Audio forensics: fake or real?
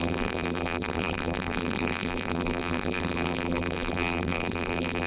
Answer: fake